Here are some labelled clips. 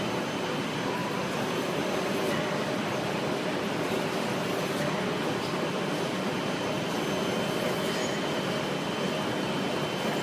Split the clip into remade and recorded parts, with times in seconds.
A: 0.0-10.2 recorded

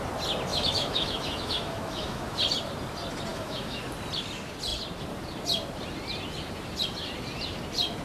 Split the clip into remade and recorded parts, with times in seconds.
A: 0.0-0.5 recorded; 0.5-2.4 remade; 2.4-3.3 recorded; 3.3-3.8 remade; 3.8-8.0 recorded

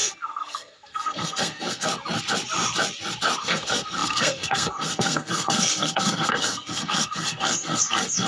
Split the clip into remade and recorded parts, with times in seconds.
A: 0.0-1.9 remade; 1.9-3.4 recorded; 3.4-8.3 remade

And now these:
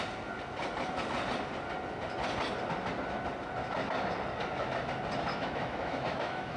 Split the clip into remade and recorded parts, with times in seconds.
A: 0.0-5.3 recorded; 5.3-6.6 remade